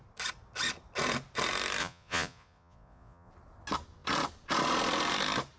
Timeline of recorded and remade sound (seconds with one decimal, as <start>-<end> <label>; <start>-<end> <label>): 0.0-1.8 recorded; 1.8-3.3 remade; 3.3-5.6 recorded